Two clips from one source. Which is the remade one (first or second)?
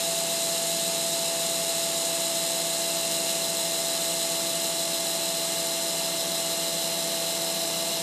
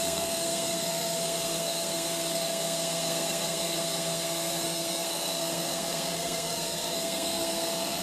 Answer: second